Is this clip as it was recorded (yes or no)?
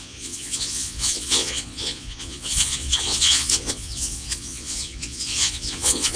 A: no